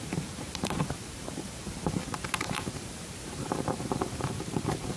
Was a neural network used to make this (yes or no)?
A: yes